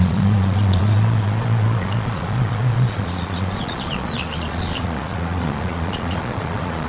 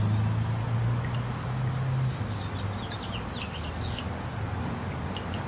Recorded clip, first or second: second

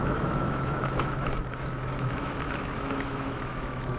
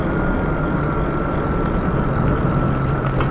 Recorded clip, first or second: second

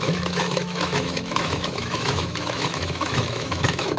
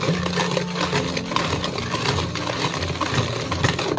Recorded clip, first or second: second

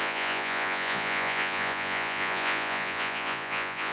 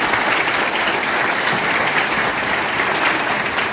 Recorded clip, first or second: second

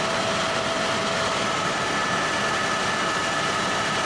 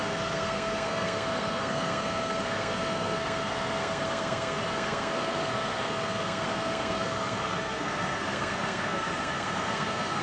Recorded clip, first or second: first